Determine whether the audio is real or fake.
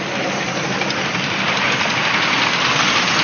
real